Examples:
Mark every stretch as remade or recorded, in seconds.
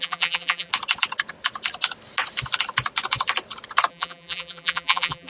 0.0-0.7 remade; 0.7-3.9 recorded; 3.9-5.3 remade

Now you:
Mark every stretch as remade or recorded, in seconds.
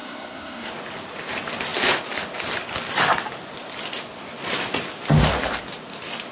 0.0-0.7 remade; 0.7-6.3 recorded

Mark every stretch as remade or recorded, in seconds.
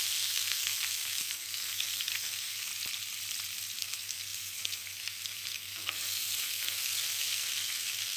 0.0-2.7 remade; 2.7-3.8 recorded; 3.8-8.2 remade